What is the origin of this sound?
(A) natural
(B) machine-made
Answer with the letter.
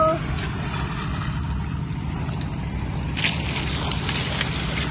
A